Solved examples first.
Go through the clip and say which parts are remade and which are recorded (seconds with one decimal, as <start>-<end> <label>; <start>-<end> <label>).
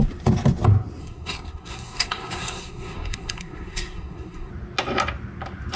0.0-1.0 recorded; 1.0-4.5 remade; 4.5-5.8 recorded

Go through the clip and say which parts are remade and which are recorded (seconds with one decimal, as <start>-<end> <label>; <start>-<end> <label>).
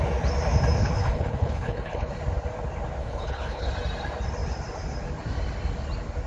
0.0-0.8 recorded; 0.8-2.1 remade; 2.1-3.0 recorded; 3.0-3.7 remade; 3.7-6.3 recorded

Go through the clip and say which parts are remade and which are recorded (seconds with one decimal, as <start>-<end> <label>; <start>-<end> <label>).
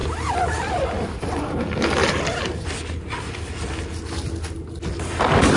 0.0-5.6 recorded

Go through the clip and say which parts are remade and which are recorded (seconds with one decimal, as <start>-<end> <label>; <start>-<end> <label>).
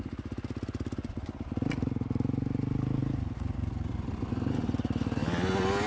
0.0-5.9 recorded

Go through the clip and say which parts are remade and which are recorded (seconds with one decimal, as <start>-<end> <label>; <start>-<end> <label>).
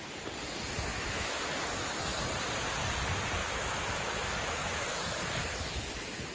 0.0-0.9 recorded; 0.9-1.4 remade; 1.4-3.4 recorded; 3.4-6.3 remade